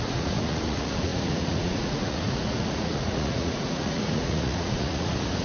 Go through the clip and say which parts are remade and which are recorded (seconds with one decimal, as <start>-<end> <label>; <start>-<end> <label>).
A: 0.0-5.4 remade